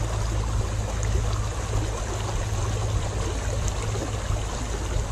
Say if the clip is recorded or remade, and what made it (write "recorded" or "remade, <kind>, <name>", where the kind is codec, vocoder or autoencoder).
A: recorded